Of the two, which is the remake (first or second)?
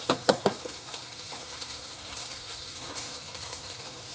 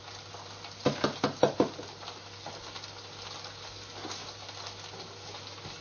first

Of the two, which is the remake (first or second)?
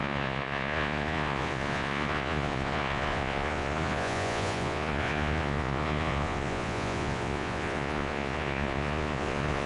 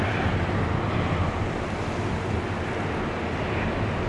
first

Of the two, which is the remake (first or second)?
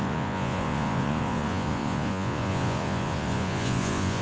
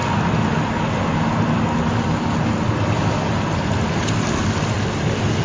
first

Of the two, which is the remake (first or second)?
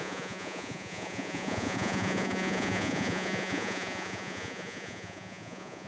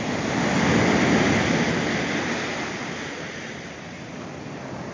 first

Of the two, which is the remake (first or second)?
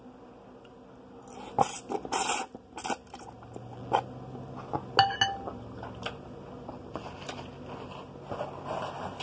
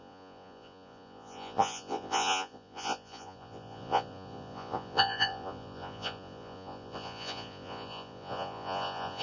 second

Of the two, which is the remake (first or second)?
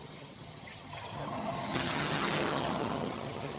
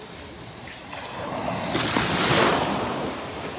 first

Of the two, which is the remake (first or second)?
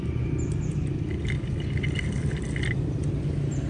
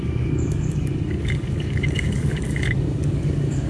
second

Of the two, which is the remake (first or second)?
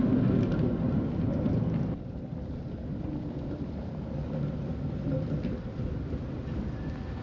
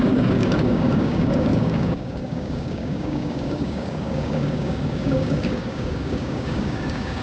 second